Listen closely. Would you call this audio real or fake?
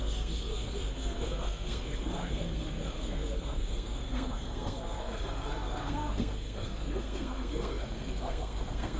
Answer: fake